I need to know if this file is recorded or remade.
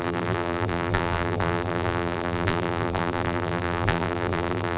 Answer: remade